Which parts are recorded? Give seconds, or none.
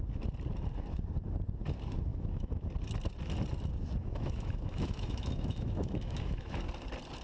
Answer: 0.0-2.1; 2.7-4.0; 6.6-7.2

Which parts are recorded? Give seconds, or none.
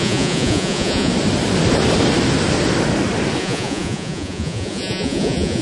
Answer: 1.1-3.4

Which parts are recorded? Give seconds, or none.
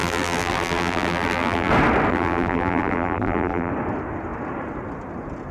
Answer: 1.7-2.1; 3.7-5.5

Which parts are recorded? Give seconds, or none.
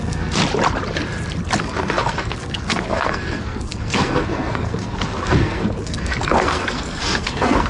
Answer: 0.4-1.6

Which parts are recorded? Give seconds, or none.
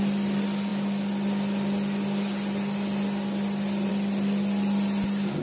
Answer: 0.0-5.4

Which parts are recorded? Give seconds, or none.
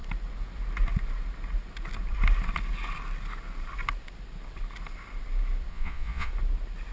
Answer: 0.0-5.7; 6.3-6.9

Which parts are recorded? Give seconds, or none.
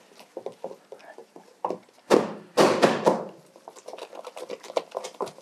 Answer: 0.0-5.4